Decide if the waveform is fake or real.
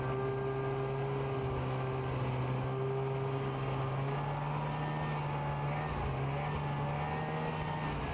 real